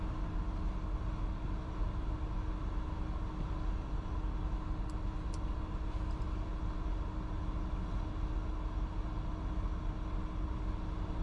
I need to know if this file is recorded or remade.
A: recorded